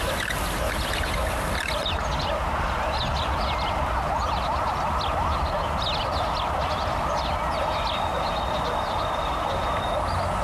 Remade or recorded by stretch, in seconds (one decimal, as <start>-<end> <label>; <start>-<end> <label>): 0.0-10.4 recorded